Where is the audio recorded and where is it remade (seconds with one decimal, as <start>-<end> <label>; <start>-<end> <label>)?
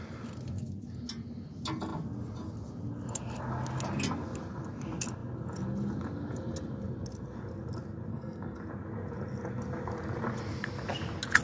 0.0-8.1 recorded; 8.1-8.6 remade; 8.6-11.4 recorded